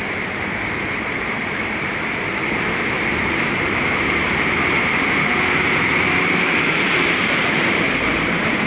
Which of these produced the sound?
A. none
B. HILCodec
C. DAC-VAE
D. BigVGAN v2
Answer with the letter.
D